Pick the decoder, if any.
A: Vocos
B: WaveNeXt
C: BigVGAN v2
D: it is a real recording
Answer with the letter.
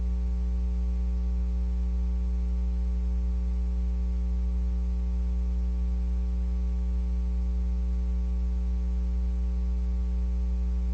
D